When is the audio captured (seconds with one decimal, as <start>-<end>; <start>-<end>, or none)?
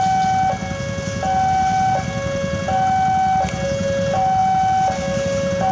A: 0.0-5.7